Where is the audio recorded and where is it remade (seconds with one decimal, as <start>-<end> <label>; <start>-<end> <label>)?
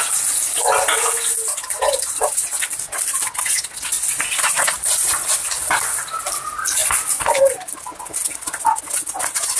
0.0-9.6 recorded